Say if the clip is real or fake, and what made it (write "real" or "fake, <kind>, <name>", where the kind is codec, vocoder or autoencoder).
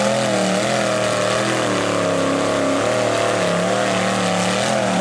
real